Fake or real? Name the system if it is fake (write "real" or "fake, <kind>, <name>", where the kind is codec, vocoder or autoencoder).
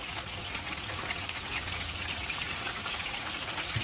fake, vocoder, Vocos